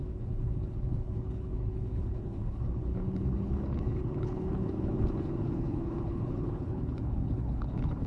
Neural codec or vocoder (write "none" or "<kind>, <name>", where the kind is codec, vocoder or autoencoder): codec, HILCodec